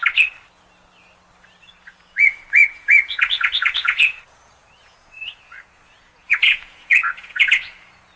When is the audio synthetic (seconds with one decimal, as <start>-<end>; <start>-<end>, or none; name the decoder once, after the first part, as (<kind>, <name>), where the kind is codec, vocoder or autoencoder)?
1.6-8.2 (vocoder, Vocos)